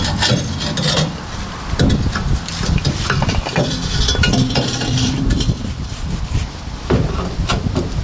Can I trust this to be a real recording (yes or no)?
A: no